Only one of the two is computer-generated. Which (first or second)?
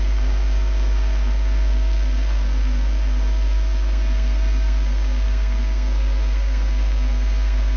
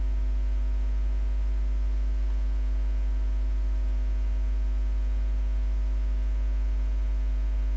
first